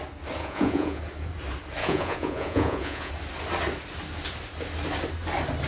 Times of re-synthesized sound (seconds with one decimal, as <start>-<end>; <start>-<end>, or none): 0.4-1.0; 1.8-3.1